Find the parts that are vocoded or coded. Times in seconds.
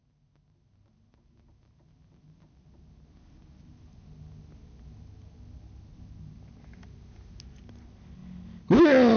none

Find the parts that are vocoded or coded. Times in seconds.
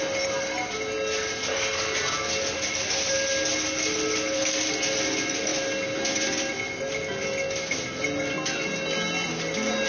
none